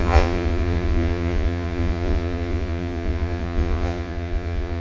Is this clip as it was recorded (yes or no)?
no